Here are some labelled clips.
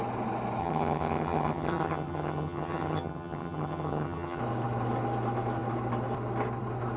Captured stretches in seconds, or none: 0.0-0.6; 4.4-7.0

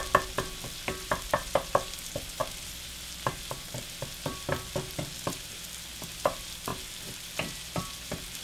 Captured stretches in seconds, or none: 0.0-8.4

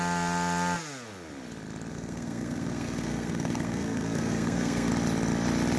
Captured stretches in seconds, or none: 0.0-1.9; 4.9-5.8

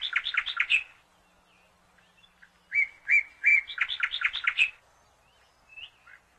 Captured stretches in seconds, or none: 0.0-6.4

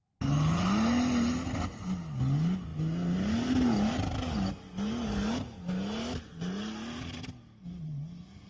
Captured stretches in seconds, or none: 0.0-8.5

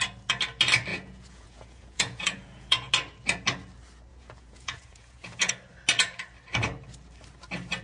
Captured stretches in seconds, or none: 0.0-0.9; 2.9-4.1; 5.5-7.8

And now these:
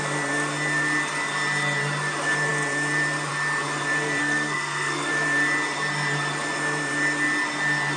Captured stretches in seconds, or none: 0.0-4.2; 5.1-8.0

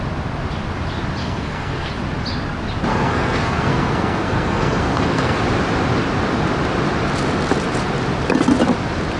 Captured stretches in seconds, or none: 0.0-1.2; 1.9-2.9; 5.4-9.2